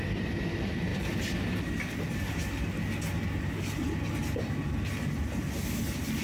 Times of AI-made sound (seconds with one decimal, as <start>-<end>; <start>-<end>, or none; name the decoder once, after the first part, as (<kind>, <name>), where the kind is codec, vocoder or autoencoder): none